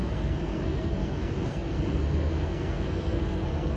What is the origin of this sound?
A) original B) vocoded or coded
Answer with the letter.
B